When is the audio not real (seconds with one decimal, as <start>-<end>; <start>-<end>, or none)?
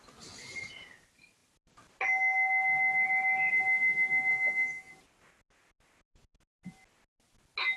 4.3-4.9